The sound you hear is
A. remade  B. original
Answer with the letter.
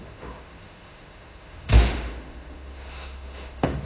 A